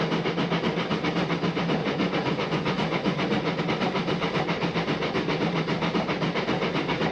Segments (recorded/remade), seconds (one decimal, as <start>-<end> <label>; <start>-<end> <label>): 0.0-1.8 recorded; 1.8-3.6 remade; 3.6-7.1 recorded